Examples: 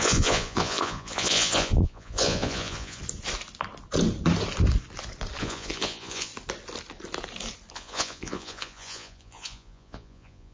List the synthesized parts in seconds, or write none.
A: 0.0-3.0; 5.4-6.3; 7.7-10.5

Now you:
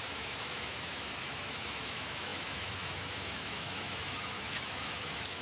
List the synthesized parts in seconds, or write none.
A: 0.0-5.4

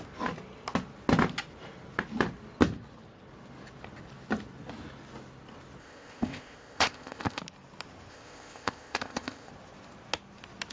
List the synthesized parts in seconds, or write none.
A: 5.8-7.4; 8.1-9.5

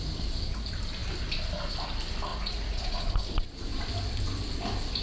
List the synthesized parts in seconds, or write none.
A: 2.3-3.0

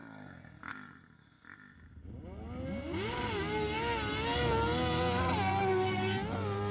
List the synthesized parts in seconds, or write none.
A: none